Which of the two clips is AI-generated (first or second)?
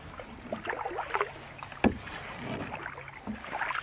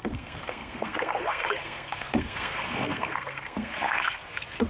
second